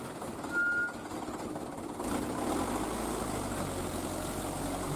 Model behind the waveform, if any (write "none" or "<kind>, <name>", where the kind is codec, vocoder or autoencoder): none